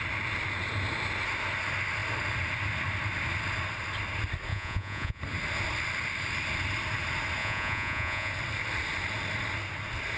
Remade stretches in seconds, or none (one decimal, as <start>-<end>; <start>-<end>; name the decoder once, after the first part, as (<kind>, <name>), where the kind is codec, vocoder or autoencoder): 4.5-5.2 (vocoder, Vocos); 7.4-8.3